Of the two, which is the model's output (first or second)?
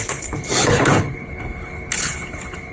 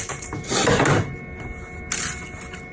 first